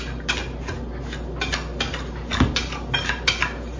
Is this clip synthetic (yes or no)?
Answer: no